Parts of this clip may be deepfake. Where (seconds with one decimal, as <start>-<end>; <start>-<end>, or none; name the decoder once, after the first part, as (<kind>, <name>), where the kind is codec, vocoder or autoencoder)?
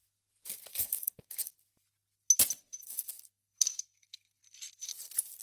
0.7-1.5 (codec, SNAC); 2.8-4.4